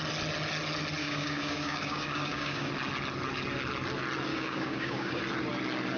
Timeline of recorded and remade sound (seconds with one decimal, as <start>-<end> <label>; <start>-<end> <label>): 0.0-1.0 recorded; 1.0-2.7 remade; 2.7-4.3 recorded; 4.3-5.2 remade; 5.2-6.0 recorded